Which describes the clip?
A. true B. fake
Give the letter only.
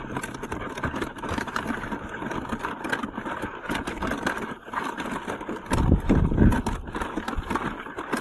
A